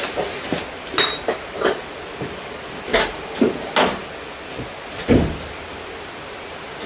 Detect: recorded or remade recorded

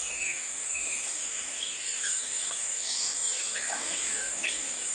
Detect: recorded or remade remade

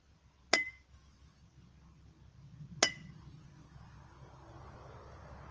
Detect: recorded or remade recorded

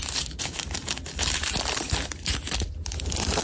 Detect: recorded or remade recorded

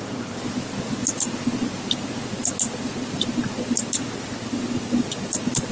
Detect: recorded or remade recorded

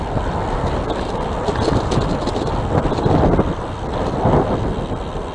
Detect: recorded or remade recorded